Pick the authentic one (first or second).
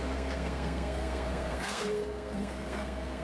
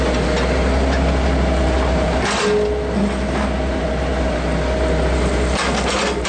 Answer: second